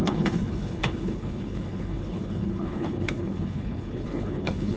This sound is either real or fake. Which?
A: fake